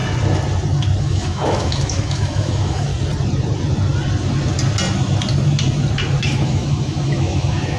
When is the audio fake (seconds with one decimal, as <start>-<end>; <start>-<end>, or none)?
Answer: 1.0-2.9; 6.2-7.8